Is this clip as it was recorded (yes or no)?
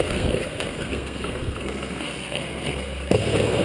no